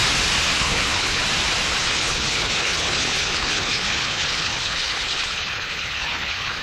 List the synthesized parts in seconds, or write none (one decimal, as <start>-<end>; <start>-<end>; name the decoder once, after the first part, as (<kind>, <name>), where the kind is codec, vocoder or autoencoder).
0.6-1.2 (codec, HILCodec); 1.8-6.6